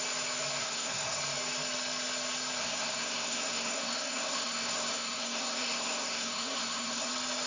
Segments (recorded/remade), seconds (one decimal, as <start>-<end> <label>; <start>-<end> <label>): 0.0-0.6 recorded; 0.6-1.2 remade; 1.2-2.6 recorded; 2.6-7.1 remade; 7.1-7.5 recorded